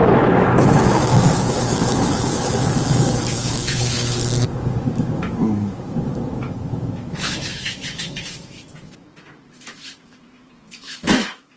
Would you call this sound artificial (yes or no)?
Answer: yes